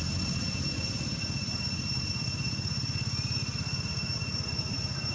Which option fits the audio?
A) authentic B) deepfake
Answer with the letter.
B